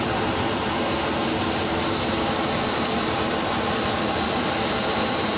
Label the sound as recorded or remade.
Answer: recorded